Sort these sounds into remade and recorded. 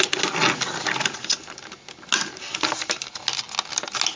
recorded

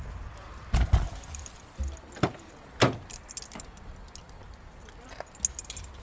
recorded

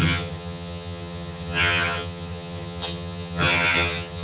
remade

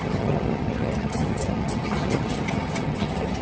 remade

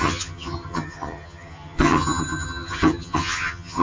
remade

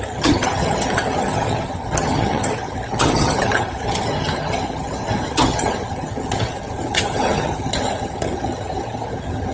remade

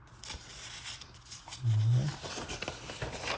recorded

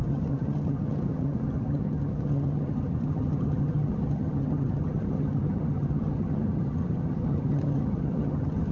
remade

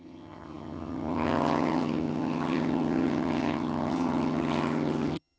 remade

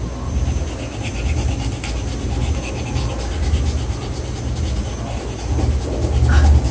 recorded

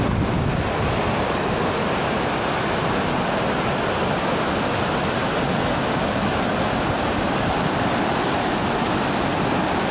recorded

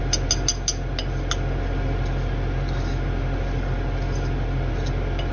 recorded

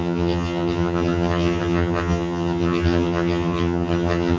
remade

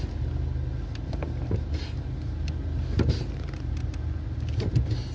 recorded